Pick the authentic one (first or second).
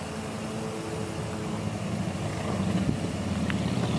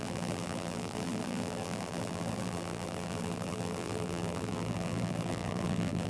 first